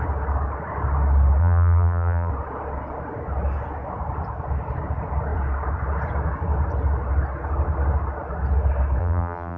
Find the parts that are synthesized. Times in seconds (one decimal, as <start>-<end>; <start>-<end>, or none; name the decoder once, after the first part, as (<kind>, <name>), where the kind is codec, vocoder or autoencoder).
1.4-2.3 (vocoder, BigVGAN v2); 9.0-9.6